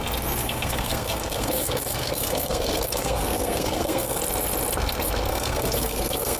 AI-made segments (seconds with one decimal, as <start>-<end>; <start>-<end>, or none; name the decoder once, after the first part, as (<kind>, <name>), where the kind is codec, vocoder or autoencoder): 0.4-4.2 (codec, SNAC); 5.3-6.4